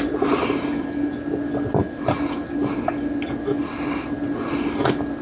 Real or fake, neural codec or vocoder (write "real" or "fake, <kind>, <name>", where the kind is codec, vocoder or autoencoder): real